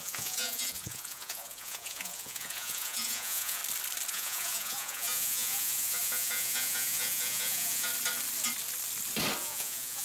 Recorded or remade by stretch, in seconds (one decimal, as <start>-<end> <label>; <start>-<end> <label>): 0.0-3.6 remade; 3.6-4.1 recorded; 4.1-7.9 remade; 7.9-9.4 recorded; 9.4-10.0 remade